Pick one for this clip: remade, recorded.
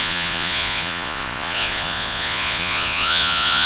remade